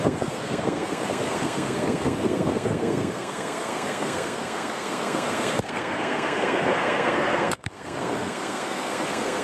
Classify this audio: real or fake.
fake